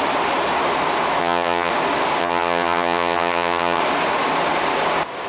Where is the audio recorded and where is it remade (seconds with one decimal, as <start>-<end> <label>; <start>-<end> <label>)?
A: 0.0-1.2 recorded; 1.2-1.7 remade; 1.7-2.2 recorded; 2.2-3.8 remade; 3.8-5.3 recorded